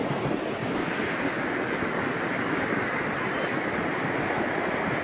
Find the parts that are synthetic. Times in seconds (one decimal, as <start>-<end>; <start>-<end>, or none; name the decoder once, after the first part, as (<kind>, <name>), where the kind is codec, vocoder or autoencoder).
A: none